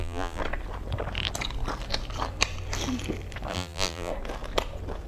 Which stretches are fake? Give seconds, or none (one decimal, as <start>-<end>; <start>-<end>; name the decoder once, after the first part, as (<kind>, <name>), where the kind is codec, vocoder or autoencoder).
0.0-0.4 (vocoder, BigVGAN v2); 3.5-4.1